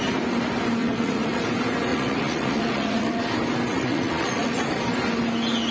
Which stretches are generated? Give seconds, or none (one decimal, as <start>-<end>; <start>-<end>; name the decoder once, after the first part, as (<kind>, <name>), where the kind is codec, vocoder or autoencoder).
0.8-1.4 (vocoder, Vocos); 1.9-3.2; 3.7-4.6